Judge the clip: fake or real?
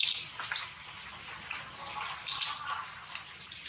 real